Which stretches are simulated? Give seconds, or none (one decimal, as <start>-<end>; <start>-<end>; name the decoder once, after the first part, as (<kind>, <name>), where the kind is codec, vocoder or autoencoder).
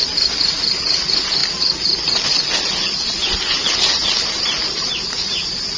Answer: none